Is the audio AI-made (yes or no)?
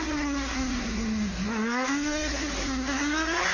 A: yes